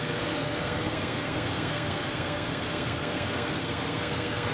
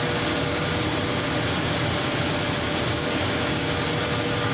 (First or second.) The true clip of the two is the second